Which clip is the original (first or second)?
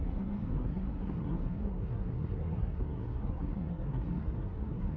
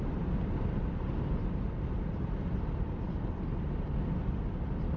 second